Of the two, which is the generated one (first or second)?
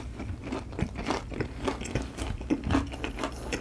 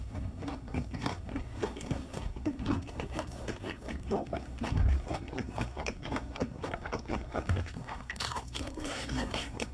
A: second